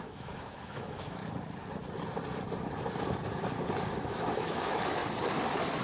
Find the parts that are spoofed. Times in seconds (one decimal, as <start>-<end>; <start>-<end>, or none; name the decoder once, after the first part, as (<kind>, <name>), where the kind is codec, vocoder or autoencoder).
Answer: 0.0-1.2 (autoencoder, DAC-VAE); 3.9-5.0